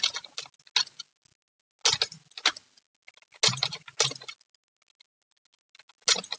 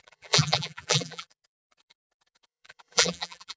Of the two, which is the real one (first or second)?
first